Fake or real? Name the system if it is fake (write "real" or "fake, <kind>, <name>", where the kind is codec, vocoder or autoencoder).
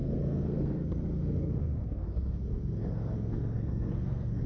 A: fake, codec, SNAC